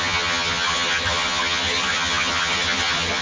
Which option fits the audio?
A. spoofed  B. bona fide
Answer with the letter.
A